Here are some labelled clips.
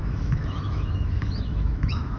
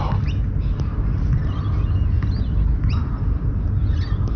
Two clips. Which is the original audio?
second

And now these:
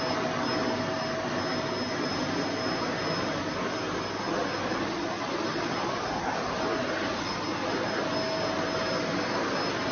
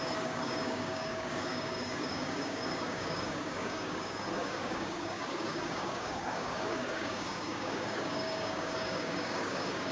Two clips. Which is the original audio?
first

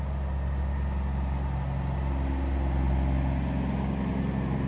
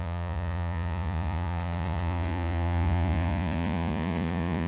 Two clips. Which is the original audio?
first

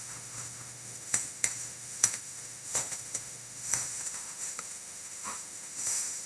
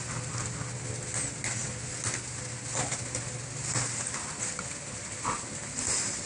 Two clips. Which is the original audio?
second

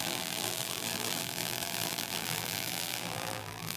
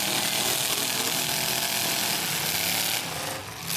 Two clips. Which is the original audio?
second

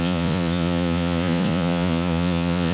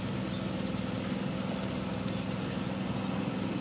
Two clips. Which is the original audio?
second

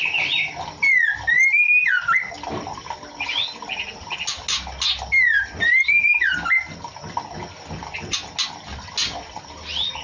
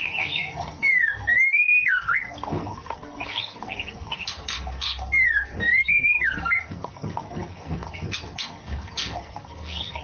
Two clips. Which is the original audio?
first